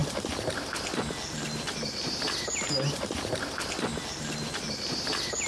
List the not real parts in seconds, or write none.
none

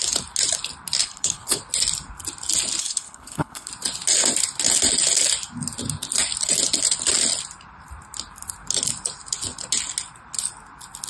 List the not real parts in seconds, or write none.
1.0-1.6; 2.8-3.7

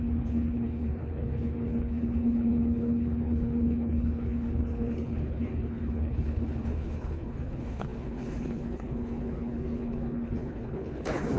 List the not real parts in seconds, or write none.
0.0-11.4

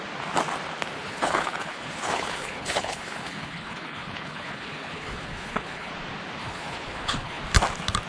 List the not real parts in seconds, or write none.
1.0-5.9; 6.4-7.4

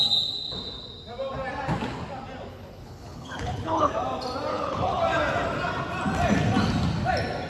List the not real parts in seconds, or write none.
2.5-3.9; 4.5-5.0